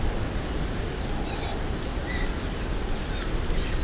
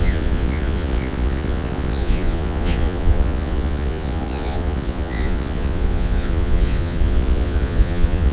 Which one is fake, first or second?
second